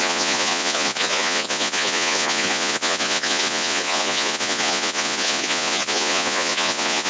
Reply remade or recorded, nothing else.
remade